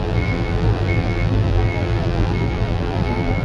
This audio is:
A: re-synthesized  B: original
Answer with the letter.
A